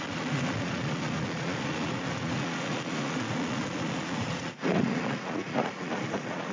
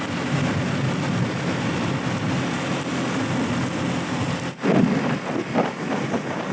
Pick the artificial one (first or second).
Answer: first